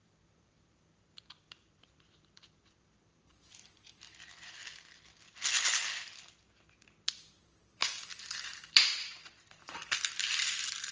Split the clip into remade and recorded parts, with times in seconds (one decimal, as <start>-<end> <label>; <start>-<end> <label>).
0.0-4.6 remade; 4.6-7.4 recorded; 7.4-8.9 remade; 8.9-9.5 recorded; 9.5-10.9 remade